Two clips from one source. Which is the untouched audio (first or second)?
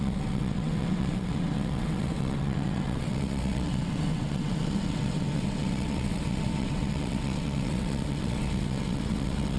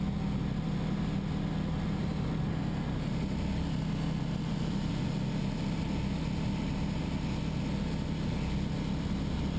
second